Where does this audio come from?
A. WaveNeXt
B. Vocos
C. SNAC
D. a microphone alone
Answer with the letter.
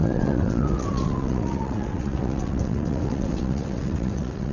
A